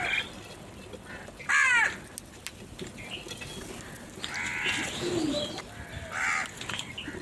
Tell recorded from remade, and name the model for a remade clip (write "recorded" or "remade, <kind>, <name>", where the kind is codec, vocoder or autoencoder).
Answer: recorded